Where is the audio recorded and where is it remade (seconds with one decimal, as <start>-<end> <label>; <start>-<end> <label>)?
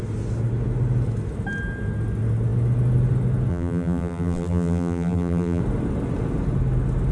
0.0-3.5 recorded; 3.5-5.6 remade; 5.6-7.1 recorded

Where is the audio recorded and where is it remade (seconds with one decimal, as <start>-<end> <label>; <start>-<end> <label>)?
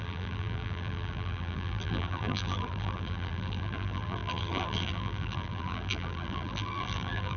0.0-7.4 remade